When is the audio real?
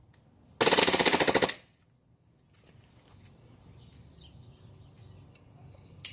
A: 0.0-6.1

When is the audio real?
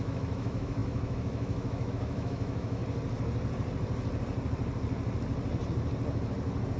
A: 2.8-6.8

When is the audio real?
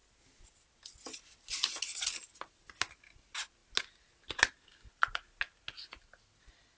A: 0.0-6.8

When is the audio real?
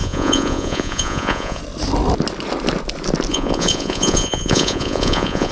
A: 1.6-3.3